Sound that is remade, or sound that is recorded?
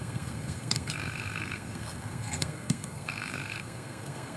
remade